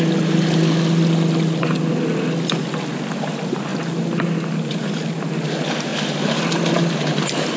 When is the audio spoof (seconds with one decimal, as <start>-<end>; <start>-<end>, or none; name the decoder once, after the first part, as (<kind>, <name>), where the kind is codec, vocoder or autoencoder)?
none